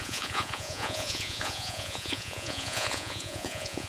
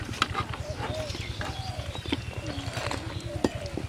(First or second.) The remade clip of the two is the first